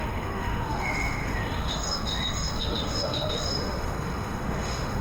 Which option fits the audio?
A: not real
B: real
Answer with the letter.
A